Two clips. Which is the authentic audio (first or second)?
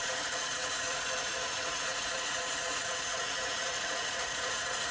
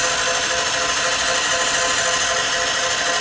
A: second